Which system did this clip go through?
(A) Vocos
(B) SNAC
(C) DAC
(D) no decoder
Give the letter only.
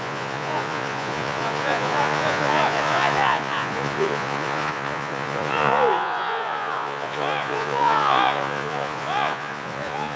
A